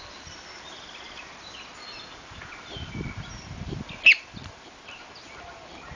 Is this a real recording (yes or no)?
yes